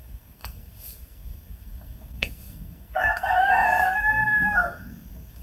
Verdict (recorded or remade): remade